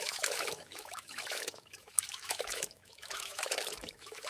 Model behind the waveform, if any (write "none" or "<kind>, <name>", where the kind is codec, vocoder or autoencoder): autoencoder, DAC-VAE